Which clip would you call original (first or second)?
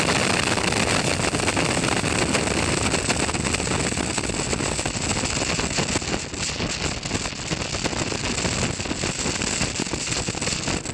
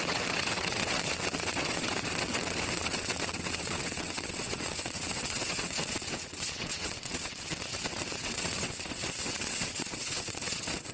first